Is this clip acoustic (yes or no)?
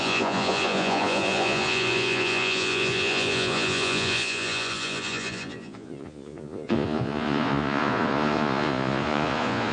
no